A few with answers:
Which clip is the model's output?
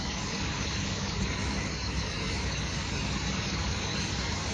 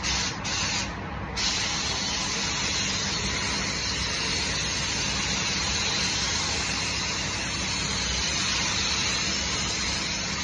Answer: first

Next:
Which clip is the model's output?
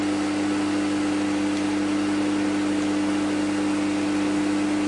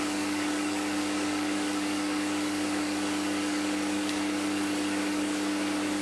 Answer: second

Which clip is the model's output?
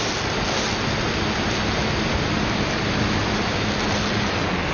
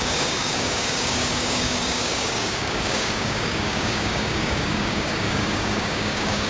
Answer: second